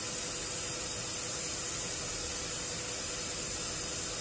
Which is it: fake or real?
real